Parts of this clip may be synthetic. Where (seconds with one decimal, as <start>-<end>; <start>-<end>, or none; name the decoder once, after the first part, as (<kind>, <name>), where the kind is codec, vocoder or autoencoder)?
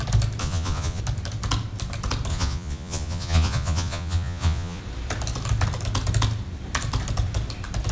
0.4-1.0 (vocoder, Vocos); 2.3-4.8